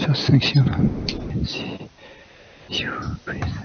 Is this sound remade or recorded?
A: recorded